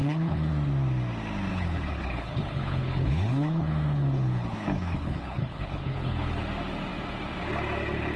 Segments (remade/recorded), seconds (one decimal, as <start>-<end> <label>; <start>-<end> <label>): 0.0-0.5 remade; 0.5-1.5 recorded; 1.5-6.4 remade; 6.4-8.2 recorded